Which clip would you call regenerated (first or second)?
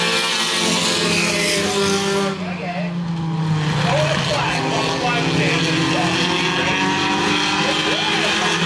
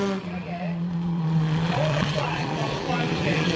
second